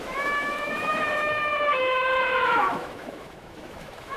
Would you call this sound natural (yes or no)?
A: no